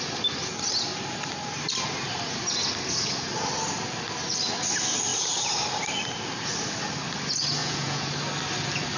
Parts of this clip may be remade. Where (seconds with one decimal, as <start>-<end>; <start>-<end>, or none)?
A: 7.6-8.1